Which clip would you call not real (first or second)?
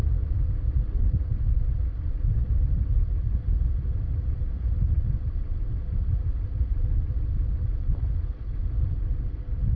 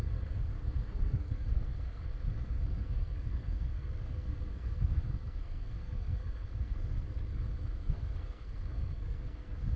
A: second